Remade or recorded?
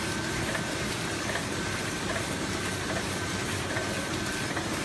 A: recorded